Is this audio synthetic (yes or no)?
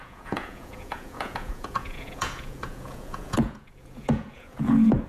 yes